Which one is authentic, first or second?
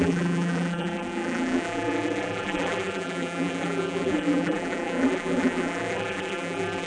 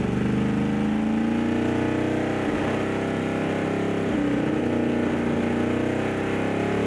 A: second